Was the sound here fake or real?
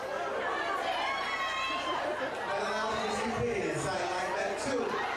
real